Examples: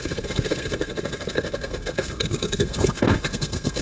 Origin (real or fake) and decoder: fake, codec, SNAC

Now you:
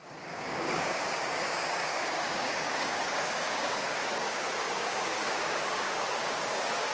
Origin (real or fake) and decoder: fake, codec, DAC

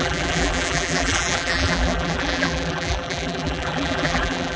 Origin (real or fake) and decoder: fake, vocoder, BigVGAN v2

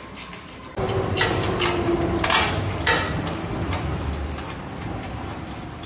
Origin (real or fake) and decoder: real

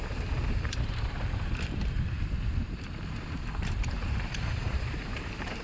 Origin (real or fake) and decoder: fake, vocoder, BigVGAN v2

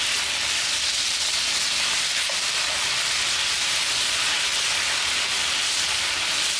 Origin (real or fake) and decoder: real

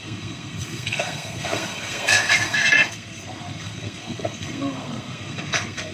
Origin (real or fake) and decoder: fake, codec, SNAC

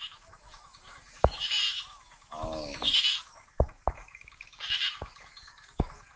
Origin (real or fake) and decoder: fake, autoencoder, DAC-VAE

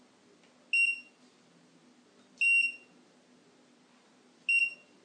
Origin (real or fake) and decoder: real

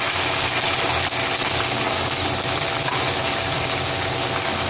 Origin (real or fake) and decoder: real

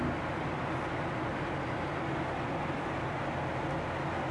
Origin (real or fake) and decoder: real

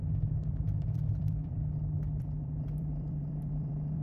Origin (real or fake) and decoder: fake, vocoder, BigVGAN v2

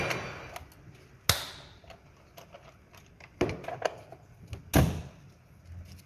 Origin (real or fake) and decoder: real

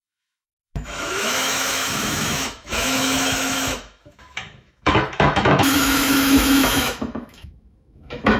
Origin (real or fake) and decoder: fake, autoencoder, DAC-VAE